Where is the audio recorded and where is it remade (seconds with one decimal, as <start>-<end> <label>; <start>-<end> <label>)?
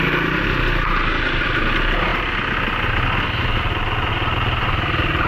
0.0-5.3 recorded